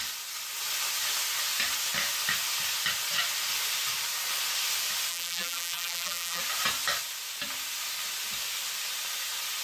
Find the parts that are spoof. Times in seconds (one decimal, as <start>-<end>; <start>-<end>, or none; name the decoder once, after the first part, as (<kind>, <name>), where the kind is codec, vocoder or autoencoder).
5.1-6.4 (vocoder, BigVGAN v2)